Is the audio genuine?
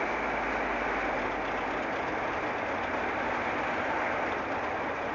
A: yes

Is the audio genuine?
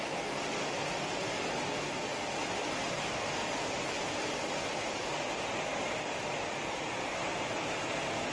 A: yes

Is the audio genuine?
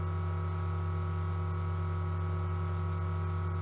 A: yes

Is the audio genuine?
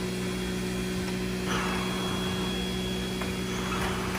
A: yes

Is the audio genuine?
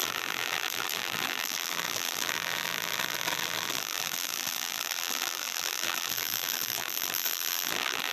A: no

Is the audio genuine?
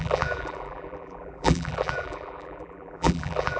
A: no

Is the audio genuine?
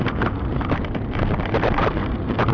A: no